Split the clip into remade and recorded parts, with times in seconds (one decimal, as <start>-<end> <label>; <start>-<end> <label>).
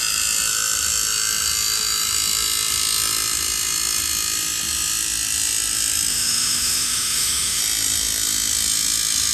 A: 0.0-6.1 recorded; 6.1-7.6 remade; 7.6-9.3 recorded